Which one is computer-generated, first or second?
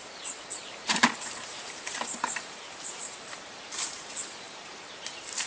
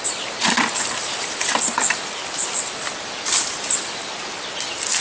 first